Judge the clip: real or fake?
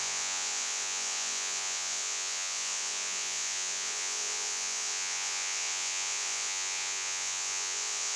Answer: fake